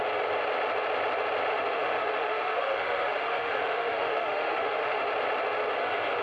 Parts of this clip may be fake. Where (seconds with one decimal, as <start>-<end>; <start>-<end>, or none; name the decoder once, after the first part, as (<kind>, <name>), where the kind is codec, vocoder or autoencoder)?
1.5-5.1 (autoencoder, DAC-VAE)